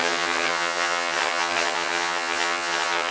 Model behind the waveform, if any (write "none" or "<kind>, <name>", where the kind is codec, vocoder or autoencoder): vocoder, HiFi-GAN